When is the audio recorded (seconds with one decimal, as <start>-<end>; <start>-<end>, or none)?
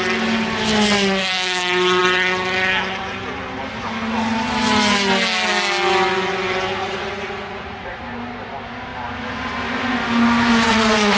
0.0-6.8; 8.0-10.7